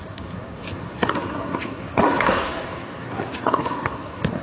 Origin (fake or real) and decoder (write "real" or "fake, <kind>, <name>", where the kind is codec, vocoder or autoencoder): fake, codec, SNAC